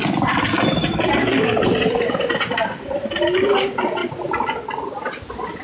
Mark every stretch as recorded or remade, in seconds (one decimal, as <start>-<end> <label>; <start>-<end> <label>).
0.0-0.8 recorded; 0.8-3.5 remade; 3.5-4.0 recorded; 4.0-5.1 remade; 5.1-5.6 recorded